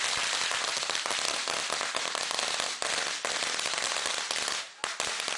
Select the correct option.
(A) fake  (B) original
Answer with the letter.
B